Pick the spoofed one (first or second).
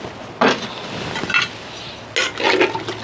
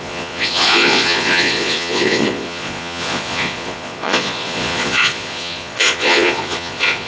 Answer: second